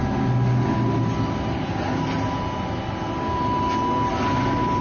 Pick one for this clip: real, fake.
real